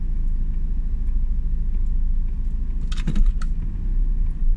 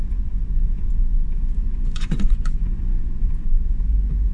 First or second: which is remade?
second